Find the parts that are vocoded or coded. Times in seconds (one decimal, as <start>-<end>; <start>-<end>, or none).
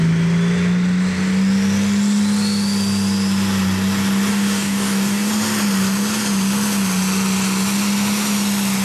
4.3-5.3